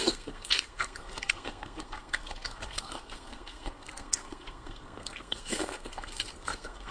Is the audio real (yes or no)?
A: no